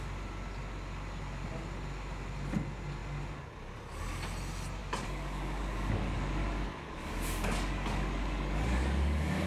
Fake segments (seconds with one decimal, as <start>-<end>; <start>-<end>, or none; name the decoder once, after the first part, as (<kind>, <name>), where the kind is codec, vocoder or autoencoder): 4.8-9.5 (codec, DAC)